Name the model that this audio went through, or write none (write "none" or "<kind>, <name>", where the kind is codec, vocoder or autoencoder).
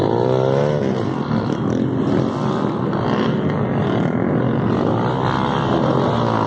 none